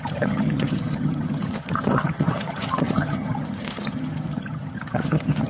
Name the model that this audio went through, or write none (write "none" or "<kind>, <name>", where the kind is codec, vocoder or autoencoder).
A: vocoder, HiFi-GAN